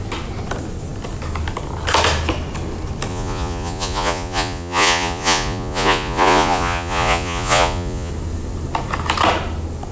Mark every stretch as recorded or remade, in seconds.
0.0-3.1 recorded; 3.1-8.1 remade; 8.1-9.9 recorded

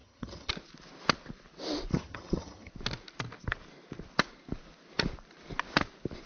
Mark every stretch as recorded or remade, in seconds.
0.0-0.5 remade; 0.5-1.9 recorded; 1.9-2.7 remade; 2.7-6.3 recorded